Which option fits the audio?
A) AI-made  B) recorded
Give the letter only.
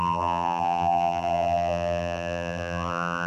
A